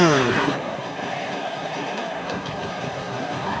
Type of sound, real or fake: fake